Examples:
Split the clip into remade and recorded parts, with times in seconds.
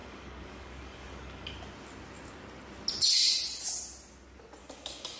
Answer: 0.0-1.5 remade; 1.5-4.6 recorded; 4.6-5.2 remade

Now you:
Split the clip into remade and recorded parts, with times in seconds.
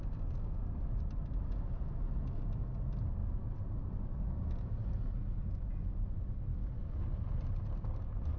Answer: 0.0-8.4 recorded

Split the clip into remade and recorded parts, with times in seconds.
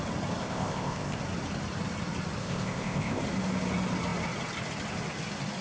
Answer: 0.0-0.4 recorded; 0.4-1.2 remade; 1.2-2.4 recorded; 2.4-3.2 remade; 3.2-5.6 recorded